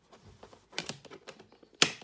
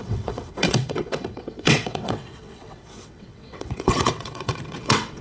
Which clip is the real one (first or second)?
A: first